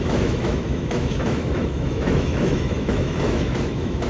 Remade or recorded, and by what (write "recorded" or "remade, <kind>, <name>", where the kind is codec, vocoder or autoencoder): remade, autoencoder, DAC-VAE